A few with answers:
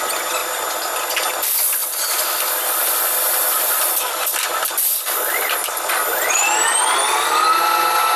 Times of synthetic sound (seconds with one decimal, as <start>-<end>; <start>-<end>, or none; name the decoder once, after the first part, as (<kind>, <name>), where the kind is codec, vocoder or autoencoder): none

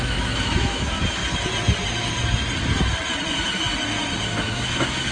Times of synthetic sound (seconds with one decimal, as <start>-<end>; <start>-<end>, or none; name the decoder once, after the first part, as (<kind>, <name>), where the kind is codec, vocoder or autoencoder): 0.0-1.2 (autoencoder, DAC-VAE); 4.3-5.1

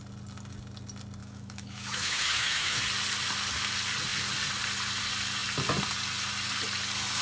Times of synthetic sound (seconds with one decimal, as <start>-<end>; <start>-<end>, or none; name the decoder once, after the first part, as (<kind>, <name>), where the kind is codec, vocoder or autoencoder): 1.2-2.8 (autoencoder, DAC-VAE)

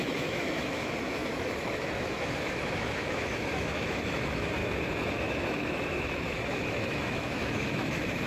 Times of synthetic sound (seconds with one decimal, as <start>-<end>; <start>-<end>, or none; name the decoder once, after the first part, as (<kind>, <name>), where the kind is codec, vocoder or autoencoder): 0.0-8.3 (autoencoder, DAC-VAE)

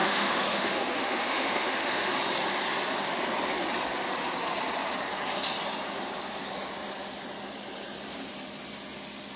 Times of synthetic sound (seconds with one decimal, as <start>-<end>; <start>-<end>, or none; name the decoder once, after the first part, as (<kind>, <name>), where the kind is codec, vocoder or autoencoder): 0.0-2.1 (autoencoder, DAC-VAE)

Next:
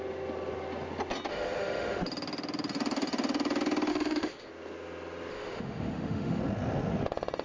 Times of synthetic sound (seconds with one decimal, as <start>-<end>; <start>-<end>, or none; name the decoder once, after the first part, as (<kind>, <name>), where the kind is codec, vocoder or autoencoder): 1.3-2.0 (autoencoder, DAC-VAE); 3.9-4.5; 5.3-6.4